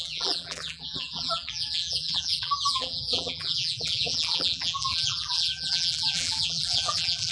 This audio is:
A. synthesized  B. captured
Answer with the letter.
A